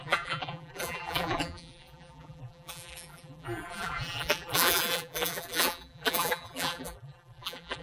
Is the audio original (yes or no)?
no